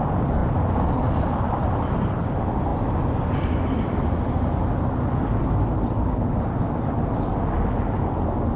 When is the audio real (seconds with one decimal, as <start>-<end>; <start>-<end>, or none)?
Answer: 0.0-8.6